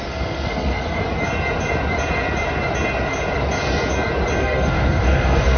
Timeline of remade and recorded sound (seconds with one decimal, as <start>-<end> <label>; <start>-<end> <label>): 0.0-1.0 remade; 1.0-4.4 recorded; 4.4-5.6 remade